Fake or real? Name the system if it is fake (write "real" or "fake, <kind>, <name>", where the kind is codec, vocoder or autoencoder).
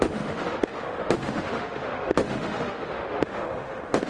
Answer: fake, autoencoder, DAC-VAE